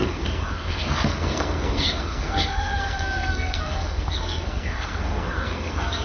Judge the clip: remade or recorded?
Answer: remade